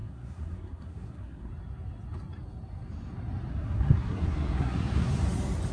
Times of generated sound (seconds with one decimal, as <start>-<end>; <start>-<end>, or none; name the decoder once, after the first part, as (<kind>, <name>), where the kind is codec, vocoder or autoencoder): 0.0-1.5 (codec, SNAC); 3.5-5.1

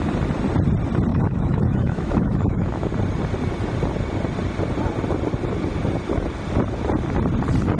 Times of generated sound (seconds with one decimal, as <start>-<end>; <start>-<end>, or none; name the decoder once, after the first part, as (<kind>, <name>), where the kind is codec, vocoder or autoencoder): 1.1-2.9 (autoencoder, DAC-VAE)

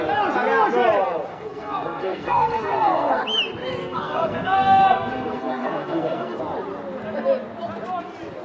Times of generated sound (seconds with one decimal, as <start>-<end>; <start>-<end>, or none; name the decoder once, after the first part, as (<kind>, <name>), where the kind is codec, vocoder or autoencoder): 1.3-3.2 (codec, SNAC); 3.8-6.4

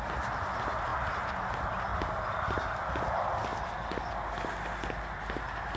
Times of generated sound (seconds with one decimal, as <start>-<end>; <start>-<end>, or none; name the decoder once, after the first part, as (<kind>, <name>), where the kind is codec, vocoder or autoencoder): none